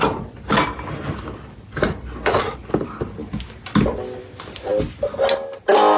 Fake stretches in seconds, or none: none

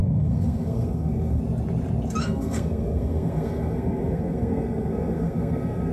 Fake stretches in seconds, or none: 0.0-1.4 (codec, SNAC); 2.2-5.9

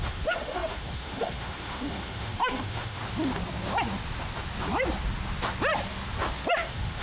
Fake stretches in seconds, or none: 0.0-3.0 (autoencoder, DAC-VAE); 6.5-7.0

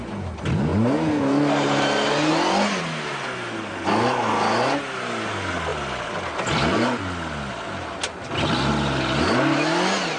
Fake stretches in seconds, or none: none

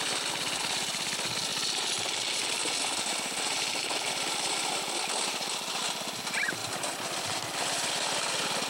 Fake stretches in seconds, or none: none

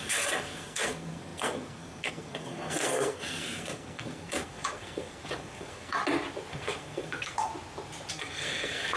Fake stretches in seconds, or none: 0.0-6.0 (codec, SNAC); 6.5-7.5; 8.1-9.0

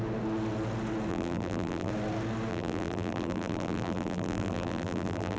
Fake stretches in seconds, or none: 1.1-1.9 (vocoder, BigVGAN v2); 2.5-5.4